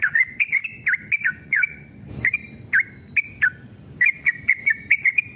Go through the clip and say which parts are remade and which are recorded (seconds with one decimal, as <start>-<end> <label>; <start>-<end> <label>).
0.0-0.6 remade; 0.6-1.3 recorded; 1.3-2.4 remade; 2.4-4.2 recorded; 4.2-5.4 remade